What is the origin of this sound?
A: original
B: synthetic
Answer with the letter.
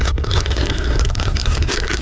B